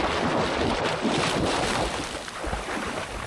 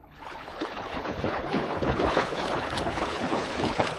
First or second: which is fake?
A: second